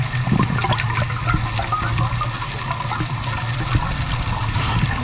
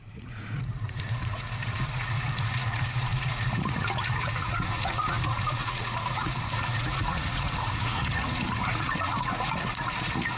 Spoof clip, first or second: second